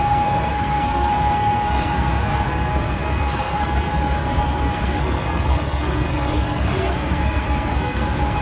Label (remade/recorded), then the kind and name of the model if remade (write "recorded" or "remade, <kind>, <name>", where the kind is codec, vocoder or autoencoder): remade, codec, SNAC